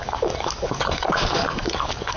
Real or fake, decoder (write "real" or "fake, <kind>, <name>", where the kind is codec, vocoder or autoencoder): fake, codec, DAC